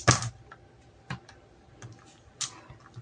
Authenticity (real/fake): real